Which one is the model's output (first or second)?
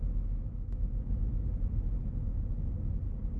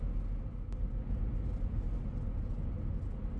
first